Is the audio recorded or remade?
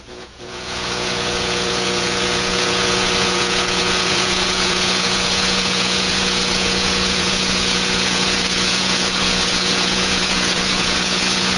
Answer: remade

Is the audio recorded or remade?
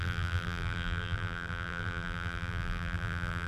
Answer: remade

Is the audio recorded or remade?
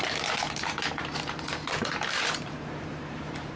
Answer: remade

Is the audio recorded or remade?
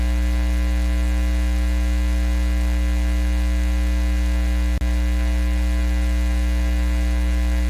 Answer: recorded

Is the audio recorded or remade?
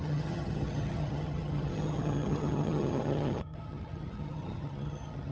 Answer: remade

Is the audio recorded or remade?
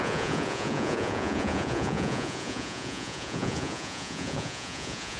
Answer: remade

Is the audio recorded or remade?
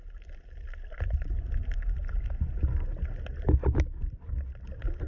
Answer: recorded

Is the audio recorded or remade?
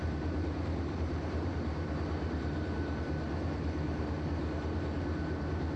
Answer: remade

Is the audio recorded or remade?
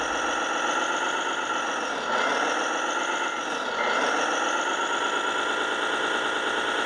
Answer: recorded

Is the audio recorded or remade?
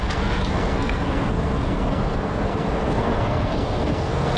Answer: remade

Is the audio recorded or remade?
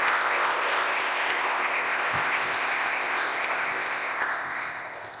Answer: remade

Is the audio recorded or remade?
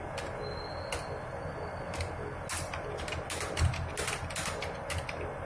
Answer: recorded